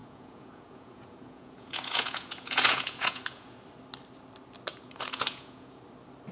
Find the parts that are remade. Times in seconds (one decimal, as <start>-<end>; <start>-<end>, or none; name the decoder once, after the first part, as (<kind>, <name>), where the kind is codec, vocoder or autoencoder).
0.0-3.6 (vocoder, Vocos); 4.7-5.8